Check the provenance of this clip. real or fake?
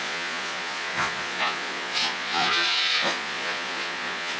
fake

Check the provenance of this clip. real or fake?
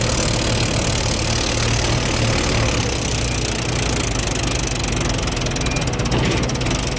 real